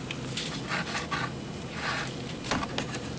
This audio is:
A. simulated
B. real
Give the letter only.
B